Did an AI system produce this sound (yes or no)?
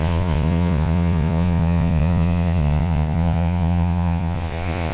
yes